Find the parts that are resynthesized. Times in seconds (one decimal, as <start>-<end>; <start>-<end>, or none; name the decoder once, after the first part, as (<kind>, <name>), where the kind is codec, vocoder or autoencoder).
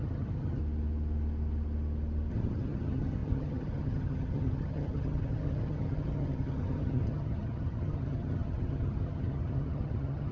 0.0-0.6 (vocoder, HiFi-GAN); 2.3-10.3